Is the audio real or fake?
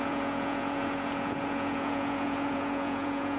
fake